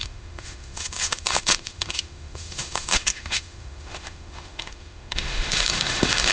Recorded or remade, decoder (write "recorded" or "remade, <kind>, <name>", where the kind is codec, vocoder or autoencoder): remade, autoencoder, DAC-VAE